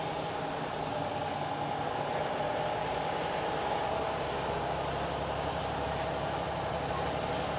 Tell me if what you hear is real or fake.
real